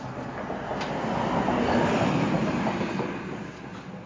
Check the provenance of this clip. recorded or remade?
recorded